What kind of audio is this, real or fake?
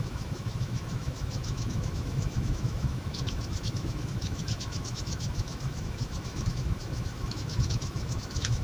fake